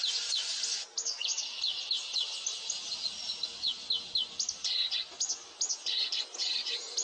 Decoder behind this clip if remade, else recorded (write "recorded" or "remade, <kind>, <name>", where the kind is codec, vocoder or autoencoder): recorded